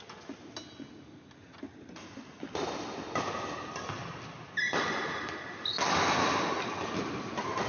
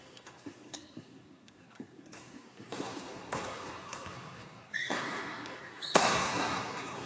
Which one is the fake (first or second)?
second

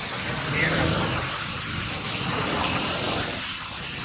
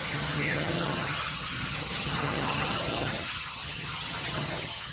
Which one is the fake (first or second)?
second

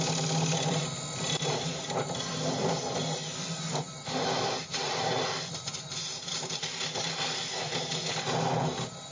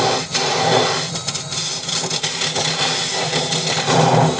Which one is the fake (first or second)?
first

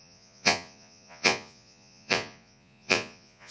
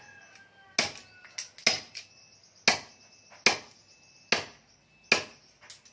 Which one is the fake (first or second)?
first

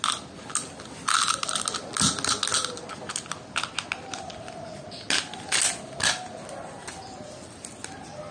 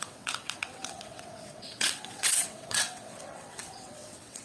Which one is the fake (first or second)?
second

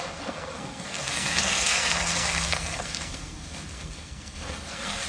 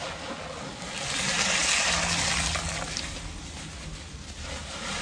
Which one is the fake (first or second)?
first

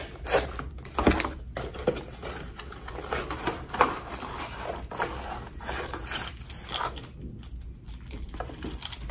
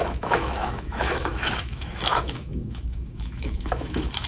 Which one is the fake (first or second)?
second